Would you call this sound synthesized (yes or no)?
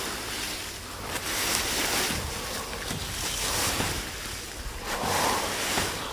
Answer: no